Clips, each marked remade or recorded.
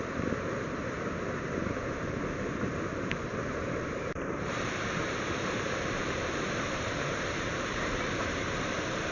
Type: remade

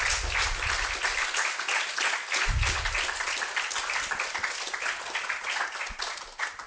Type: recorded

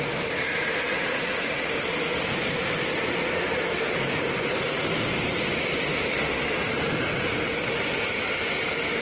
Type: recorded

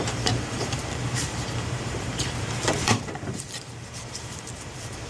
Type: remade